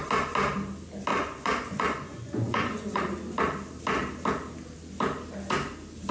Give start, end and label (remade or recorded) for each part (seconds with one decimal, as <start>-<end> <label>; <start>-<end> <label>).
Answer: 0.0-1.1 recorded; 1.1-3.0 remade; 3.0-6.1 recorded